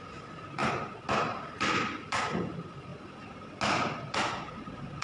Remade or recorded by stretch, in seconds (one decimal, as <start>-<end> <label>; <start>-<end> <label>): 0.0-0.6 remade; 0.6-1.2 recorded; 1.2-2.9 remade; 2.9-5.0 recorded